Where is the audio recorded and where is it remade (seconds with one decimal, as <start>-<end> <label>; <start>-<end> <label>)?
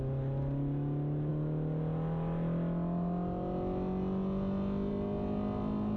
0.0-6.0 recorded